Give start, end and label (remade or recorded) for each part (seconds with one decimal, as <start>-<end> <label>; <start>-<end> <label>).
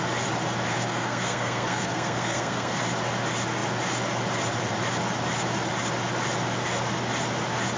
0.0-0.7 recorded; 0.7-2.8 remade; 2.8-7.8 recorded